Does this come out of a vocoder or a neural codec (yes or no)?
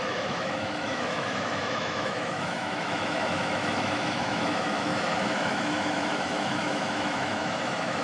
yes